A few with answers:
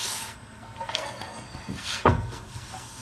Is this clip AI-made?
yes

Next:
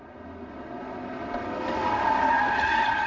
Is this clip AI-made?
no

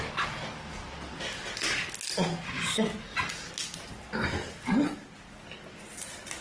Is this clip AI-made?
no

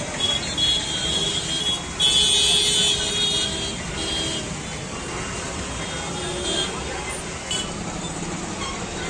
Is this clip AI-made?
no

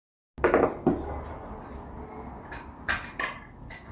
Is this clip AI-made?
no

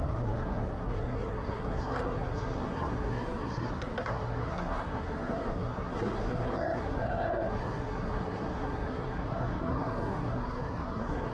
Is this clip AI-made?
yes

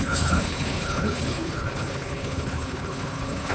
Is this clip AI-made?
yes